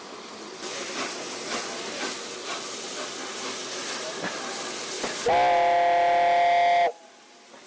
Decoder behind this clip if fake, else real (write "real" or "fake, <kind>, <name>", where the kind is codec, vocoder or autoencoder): real